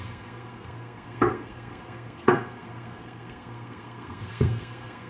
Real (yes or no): no